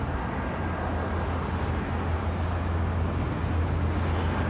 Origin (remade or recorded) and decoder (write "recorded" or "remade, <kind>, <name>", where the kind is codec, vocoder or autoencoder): recorded